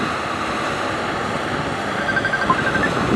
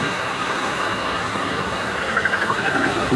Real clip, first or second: first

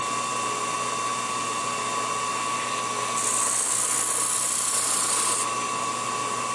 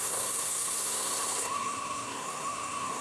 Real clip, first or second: first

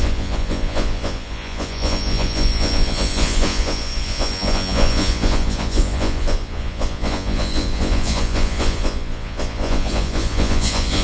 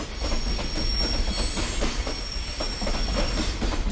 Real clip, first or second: second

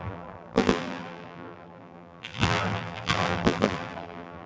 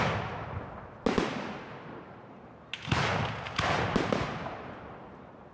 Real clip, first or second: second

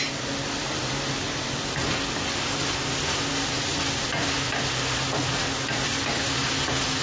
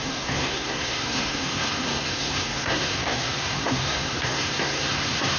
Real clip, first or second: first